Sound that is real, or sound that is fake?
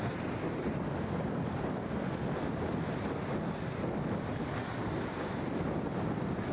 real